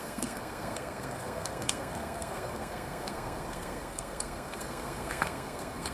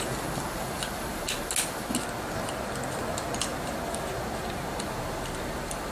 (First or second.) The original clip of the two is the second